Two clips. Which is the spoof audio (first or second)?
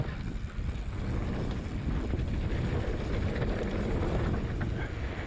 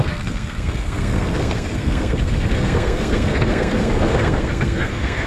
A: second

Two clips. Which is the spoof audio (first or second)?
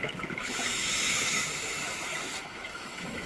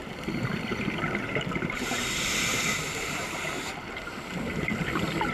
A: first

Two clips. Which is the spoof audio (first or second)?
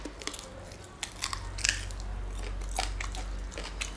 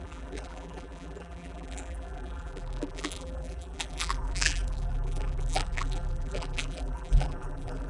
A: second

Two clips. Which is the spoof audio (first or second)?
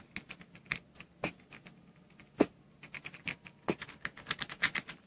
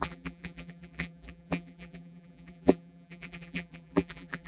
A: second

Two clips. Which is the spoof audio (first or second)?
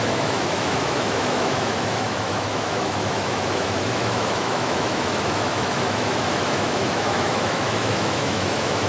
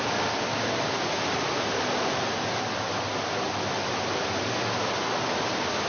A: first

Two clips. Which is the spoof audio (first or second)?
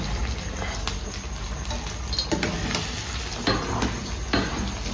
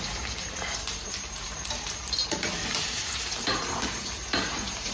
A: second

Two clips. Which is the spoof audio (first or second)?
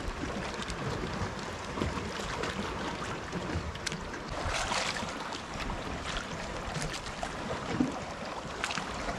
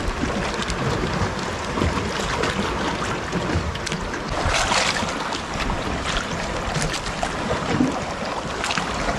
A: first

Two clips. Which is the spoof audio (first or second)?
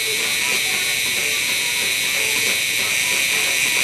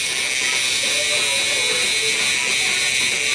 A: first